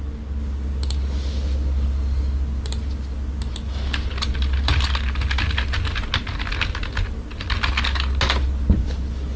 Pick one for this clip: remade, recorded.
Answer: recorded